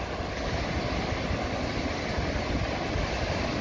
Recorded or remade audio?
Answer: recorded